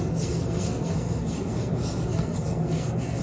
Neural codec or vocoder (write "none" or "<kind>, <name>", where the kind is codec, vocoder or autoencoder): codec, SNAC